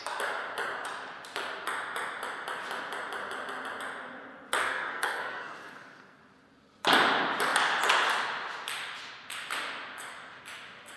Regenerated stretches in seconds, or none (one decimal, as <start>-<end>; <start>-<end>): 4.6-6.2